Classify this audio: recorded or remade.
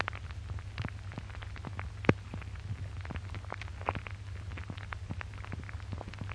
recorded